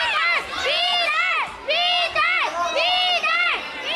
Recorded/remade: recorded